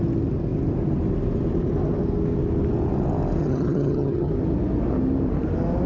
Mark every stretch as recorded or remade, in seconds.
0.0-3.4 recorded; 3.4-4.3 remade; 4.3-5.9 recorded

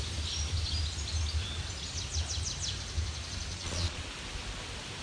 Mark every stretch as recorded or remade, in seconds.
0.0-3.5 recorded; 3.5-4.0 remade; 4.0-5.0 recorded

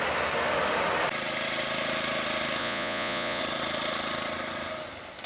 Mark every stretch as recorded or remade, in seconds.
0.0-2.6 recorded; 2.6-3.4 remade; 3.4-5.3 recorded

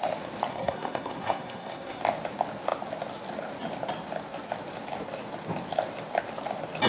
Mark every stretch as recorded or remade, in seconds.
0.0-0.5 recorded; 0.5-2.0 remade; 2.0-6.9 recorded

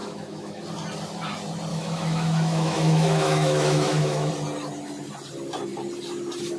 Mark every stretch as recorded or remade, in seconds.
0.0-0.6 remade; 0.6-1.7 recorded; 1.7-4.3 remade; 4.3-6.6 recorded